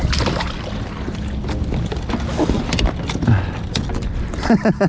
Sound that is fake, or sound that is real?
real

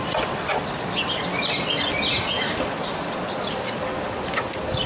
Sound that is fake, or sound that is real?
real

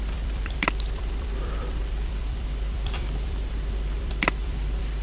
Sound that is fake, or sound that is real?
fake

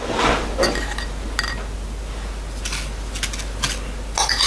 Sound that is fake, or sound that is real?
real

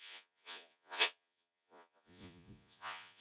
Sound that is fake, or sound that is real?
fake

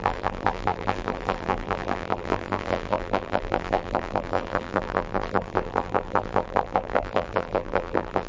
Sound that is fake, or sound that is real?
fake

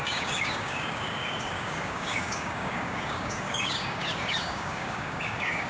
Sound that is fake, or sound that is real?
fake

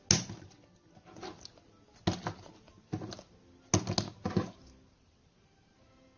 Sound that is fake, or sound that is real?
real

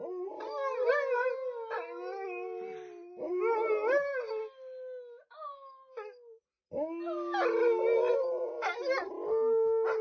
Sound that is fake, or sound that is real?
real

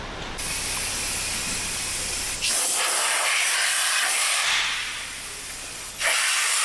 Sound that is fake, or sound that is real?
real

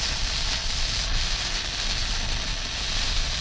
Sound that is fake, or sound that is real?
real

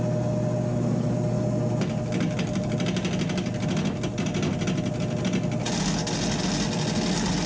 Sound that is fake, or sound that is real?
real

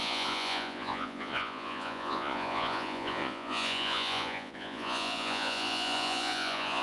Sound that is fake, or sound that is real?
fake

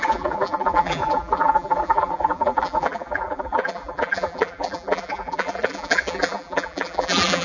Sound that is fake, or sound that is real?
fake